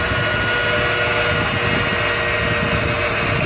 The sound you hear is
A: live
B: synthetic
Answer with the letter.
A